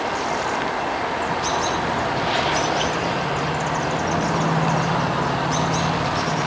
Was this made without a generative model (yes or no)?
yes